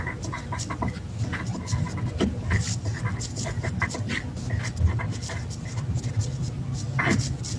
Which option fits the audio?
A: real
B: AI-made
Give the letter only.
A